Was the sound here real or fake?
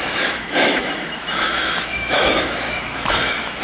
fake